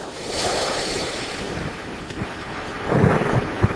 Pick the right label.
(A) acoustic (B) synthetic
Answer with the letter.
A